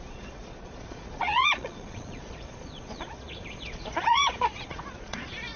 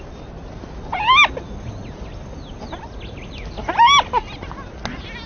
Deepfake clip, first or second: first